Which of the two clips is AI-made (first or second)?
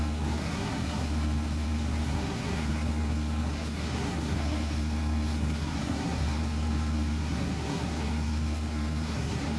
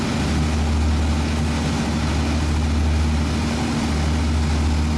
first